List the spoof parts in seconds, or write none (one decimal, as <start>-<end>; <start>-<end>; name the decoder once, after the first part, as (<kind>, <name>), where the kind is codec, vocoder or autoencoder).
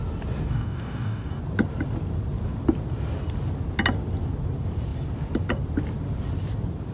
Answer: 0.5-1.4 (codec, DAC)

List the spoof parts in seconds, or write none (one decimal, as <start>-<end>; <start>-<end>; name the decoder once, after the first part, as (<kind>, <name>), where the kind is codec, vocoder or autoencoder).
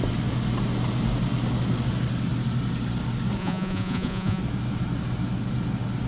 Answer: 3.4-4.4 (vocoder, Vocos)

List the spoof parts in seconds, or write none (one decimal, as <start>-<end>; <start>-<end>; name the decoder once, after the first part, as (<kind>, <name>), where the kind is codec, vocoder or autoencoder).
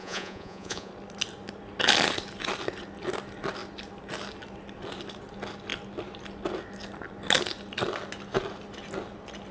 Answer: 0.0-0.9 (vocoder, Vocos)